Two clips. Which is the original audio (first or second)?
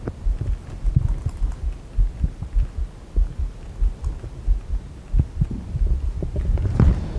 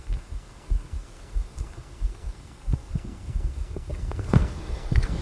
first